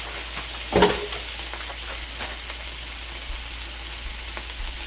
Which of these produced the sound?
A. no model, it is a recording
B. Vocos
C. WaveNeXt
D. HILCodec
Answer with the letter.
A